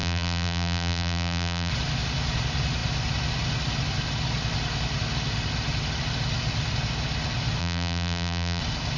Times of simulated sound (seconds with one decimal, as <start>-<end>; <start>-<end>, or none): 0.0-1.7; 7.6-8.6